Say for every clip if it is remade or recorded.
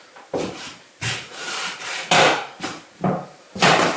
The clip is remade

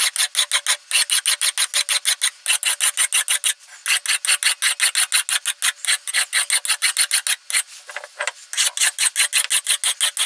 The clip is recorded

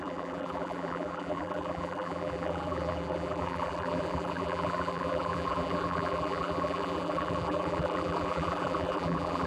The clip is remade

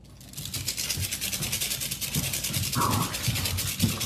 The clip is recorded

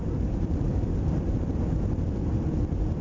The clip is remade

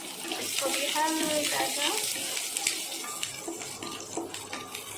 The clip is recorded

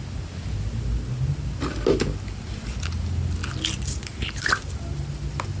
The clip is recorded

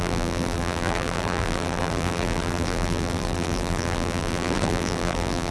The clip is remade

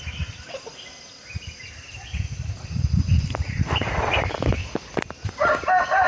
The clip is recorded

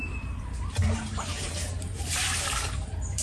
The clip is remade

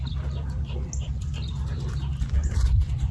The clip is remade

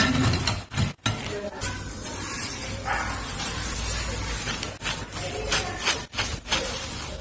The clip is recorded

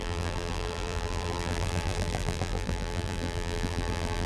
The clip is remade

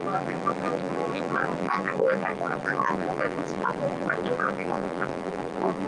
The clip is remade